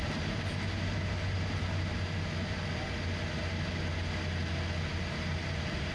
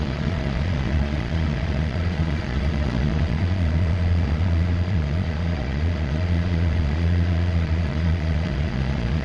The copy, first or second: second